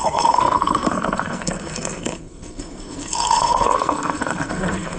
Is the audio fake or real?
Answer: fake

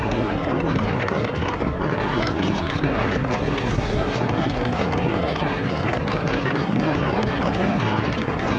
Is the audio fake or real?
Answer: fake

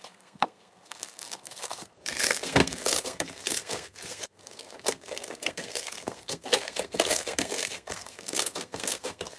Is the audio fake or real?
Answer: fake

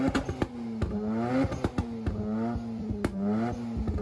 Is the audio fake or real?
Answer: real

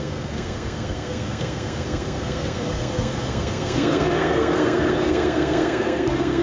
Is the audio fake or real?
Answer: fake